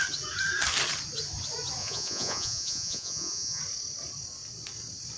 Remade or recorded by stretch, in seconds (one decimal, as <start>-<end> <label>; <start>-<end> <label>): 0.0-1.8 recorded; 1.8-3.6 remade; 3.6-5.2 recorded